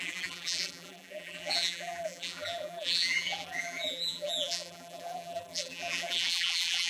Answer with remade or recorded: remade